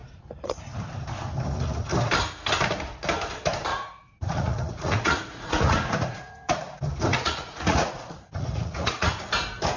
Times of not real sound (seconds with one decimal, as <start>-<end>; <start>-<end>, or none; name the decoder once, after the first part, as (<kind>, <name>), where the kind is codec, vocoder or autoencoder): 0.0-0.6 (vocoder, Vocos); 3.7-6.6; 7.1-9.1